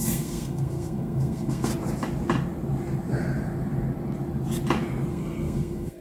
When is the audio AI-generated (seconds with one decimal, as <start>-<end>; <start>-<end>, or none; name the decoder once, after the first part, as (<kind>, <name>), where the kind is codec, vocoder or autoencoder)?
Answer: 0.0-1.7 (codec, SNAC); 5.1-6.0